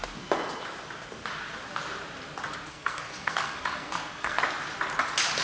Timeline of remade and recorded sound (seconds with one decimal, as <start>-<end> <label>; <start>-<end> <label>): 0.0-2.7 recorded; 2.7-4.4 remade; 4.4-5.4 recorded